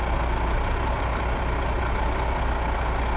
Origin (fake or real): real